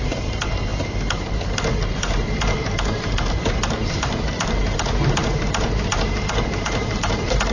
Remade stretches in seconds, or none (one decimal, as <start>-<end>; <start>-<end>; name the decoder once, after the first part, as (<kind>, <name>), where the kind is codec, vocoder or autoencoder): 0.0-0.7 (vocoder, BigVGAN v2); 1.3-7.5